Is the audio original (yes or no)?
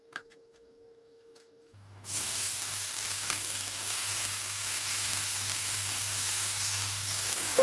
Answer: no